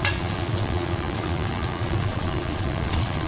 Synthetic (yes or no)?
yes